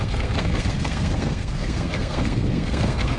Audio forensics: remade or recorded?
remade